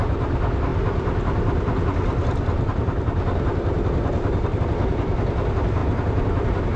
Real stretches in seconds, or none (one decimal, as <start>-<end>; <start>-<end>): 0.0-6.8